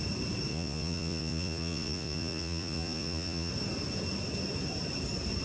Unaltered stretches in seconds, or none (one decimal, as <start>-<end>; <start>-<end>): 0.0-0.5; 3.5-5.4